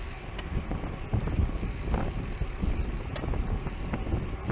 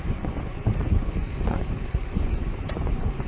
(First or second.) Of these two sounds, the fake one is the second